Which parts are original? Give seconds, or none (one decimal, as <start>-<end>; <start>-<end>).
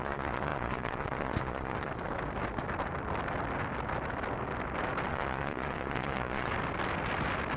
1.9-5.1; 6.5-7.6